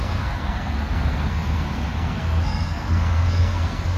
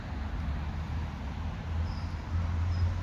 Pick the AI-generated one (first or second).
first